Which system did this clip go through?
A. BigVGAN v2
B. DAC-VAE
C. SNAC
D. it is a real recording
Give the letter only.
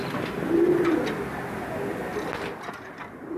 D